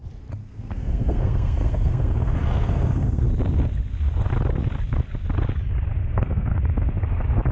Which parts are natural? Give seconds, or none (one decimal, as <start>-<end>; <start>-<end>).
0.0-0.4; 3.3-6.0; 6.6-7.5